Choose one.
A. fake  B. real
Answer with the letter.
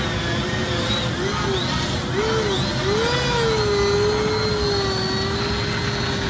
B